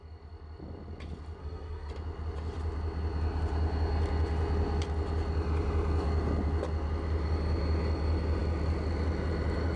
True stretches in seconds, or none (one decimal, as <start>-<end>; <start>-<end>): 0.0-1.4; 1.9-9.8

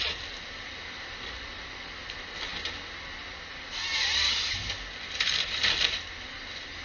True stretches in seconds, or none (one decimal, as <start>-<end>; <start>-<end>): 0.0-6.8

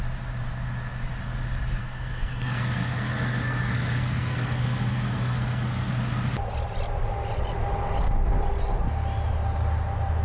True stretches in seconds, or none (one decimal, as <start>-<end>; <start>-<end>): 0.0-1.8; 5.9-10.2

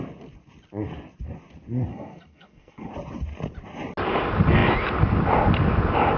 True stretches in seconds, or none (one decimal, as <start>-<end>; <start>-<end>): 0.0-1.9; 2.9-6.2

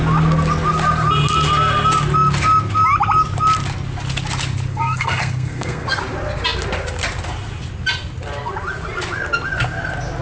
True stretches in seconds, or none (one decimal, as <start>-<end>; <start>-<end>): 0.0-4.7; 6.0-10.2

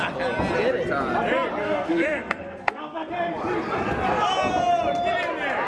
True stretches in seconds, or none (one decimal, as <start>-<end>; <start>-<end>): 0.0-1.6; 3.1-5.7

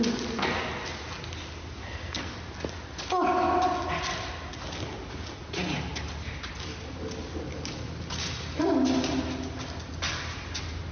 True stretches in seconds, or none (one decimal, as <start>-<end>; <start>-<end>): 0.0-1.8; 2.3-10.9